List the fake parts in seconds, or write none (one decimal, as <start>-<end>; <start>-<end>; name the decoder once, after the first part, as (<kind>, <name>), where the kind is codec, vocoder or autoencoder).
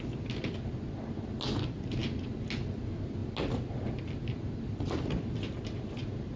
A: none